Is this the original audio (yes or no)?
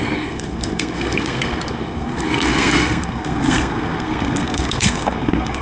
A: no